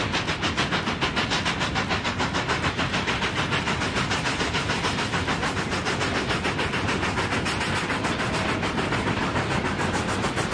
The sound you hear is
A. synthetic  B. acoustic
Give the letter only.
B